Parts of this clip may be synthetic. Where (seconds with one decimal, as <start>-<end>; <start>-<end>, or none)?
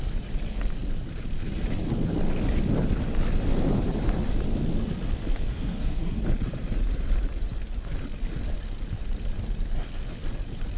5.5-6.2